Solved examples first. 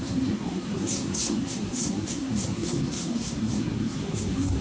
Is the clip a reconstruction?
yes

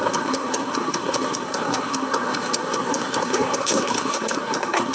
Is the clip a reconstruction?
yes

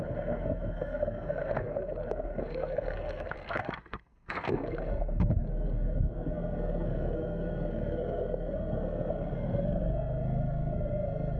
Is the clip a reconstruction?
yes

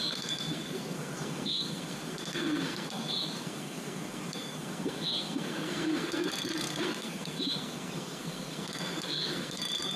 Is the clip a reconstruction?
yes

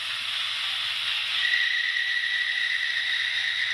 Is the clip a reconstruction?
no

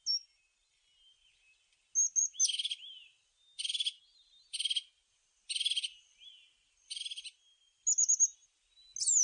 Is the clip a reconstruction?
no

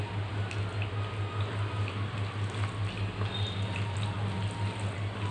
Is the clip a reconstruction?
no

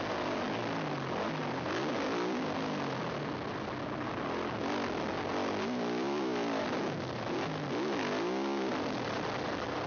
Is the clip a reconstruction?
no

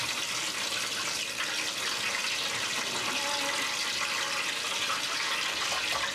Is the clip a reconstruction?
no